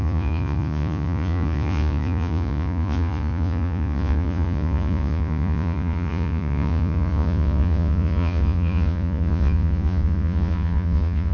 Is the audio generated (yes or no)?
yes